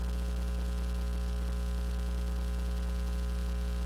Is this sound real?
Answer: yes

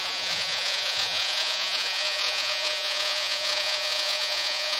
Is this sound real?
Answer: no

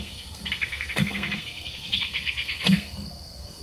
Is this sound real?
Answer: no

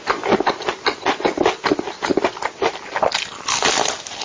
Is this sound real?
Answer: yes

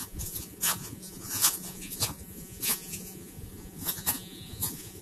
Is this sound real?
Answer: no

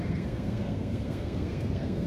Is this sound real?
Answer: no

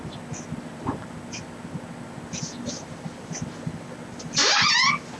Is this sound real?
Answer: yes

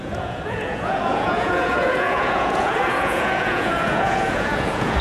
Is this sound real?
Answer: no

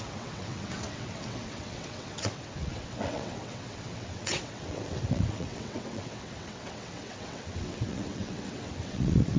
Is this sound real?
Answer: no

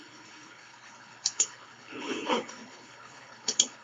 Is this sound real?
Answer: no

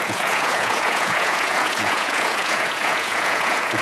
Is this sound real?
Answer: no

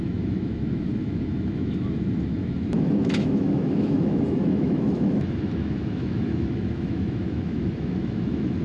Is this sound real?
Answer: no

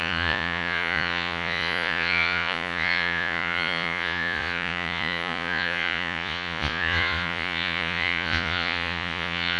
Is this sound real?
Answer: no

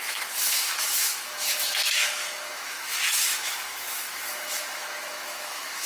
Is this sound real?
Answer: no